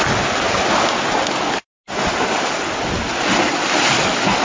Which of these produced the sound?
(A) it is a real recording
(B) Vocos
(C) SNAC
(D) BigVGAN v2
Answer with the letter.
A